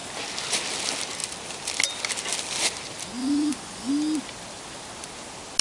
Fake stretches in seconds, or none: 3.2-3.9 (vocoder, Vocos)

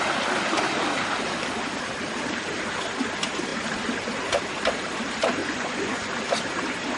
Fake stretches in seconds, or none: 5.4-6.1 (vocoder, Vocos)